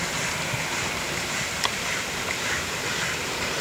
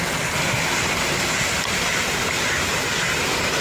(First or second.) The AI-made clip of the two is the first